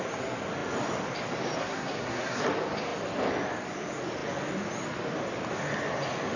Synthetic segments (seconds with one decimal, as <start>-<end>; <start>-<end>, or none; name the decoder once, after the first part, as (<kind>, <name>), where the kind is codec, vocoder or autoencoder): 1.6-2.4 (codec, SNAC)